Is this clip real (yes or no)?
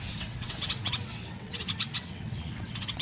no